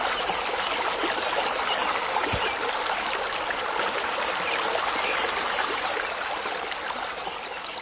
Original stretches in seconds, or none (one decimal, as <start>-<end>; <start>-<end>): 0.0-7.8